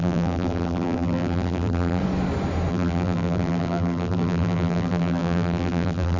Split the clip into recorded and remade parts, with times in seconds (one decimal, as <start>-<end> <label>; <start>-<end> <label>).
0.0-2.0 remade; 2.0-2.7 recorded; 2.7-6.2 remade